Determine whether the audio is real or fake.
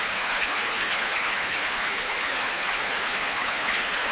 fake